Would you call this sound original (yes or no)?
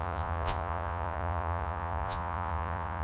no